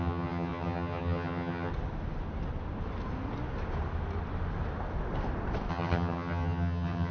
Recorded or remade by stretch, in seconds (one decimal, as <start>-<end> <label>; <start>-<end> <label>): 0.0-1.7 remade; 1.7-5.7 recorded; 5.7-7.1 remade

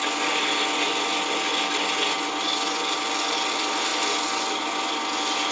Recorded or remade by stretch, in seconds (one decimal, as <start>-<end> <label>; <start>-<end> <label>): 0.0-5.5 recorded

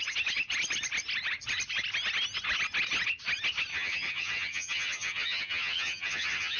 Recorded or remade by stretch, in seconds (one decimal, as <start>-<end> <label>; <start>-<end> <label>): 0.0-3.7 recorded; 3.7-6.6 remade

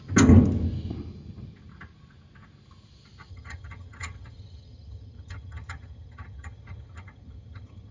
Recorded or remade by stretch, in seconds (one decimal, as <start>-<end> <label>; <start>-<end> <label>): 0.0-3.3 recorded; 3.3-7.9 remade

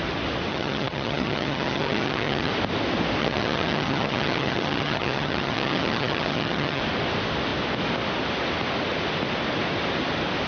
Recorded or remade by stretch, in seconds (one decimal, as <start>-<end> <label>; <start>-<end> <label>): 0.0-0.5 recorded; 0.5-2.5 remade; 2.5-3.2 recorded; 3.2-6.8 remade; 6.8-10.5 recorded